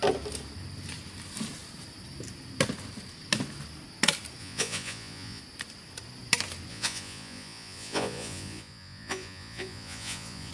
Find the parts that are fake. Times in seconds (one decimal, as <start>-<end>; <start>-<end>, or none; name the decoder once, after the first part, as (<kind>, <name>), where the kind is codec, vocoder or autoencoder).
4.4-5.4 (vocoder, Vocos); 6.7-10.5